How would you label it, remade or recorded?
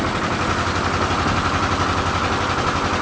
recorded